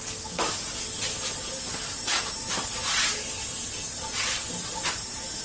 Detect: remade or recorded recorded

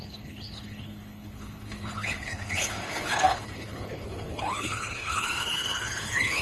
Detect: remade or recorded remade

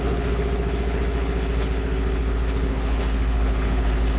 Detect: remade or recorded remade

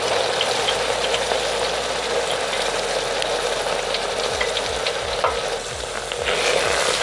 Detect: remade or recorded recorded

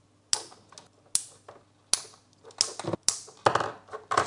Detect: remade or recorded recorded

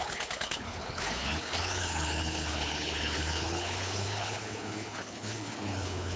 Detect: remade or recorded remade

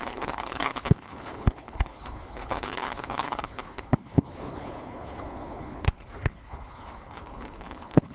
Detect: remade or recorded remade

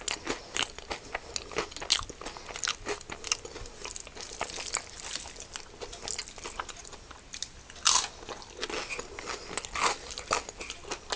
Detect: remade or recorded recorded